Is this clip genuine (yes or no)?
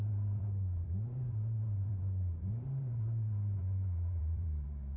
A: no